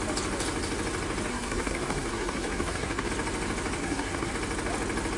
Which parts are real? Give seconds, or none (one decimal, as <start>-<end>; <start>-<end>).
0.0-1.3; 3.1-3.8; 4.3-5.2